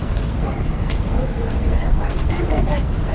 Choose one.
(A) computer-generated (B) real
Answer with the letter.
A